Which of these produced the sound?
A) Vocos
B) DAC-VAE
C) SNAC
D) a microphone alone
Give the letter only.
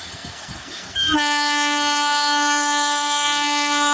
C